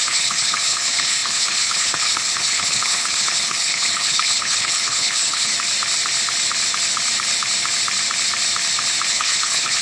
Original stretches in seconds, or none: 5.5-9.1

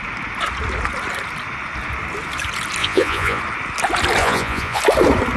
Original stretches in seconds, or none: 0.0-2.8; 3.4-4.2; 4.8-5.4

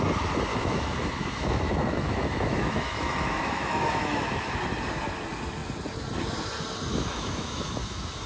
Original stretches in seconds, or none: 0.0-0.5; 4.6-6.9

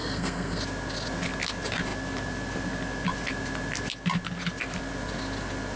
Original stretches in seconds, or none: 0.6-5.8

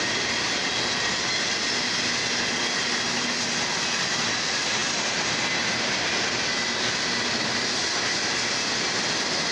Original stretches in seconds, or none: 0.0-9.5